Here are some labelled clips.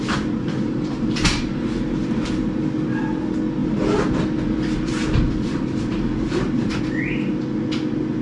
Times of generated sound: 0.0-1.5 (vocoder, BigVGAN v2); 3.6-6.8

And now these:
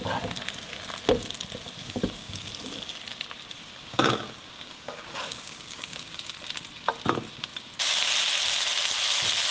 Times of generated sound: 1.8-2.5 (codec, DAC); 3.6-6.3

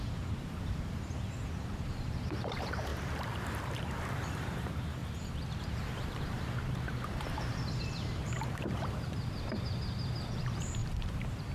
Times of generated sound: 0.0-5.0 (vocoder, BigVGAN v2); 5.6-11.5

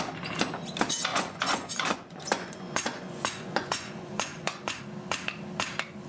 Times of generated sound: 1.1-4.8 (vocoder, Vocos)

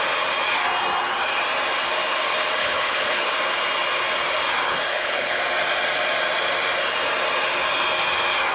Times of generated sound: 2.6-3.3 (codec, HILCodec); 4.9-5.4

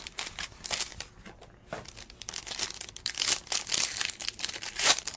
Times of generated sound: 0.0-0.9 (vocoder, BigVGAN v2); 4.0-5.2